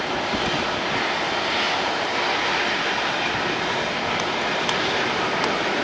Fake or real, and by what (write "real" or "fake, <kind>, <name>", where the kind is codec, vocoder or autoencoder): real